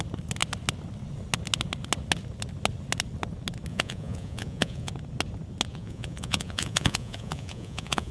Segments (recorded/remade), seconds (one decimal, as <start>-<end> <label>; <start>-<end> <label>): 0.0-3.7 recorded; 3.7-4.9 remade; 4.9-5.7 recorded; 5.7-8.1 remade